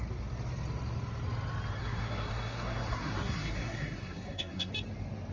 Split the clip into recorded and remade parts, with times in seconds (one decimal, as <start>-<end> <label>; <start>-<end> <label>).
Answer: 0.0-1.8 recorded; 1.8-4.7 remade; 4.7-5.3 recorded